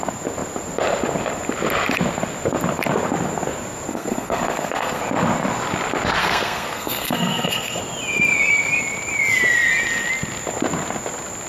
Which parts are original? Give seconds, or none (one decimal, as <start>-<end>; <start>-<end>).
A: 0.0-3.9; 5.0-6.2; 7.8-11.5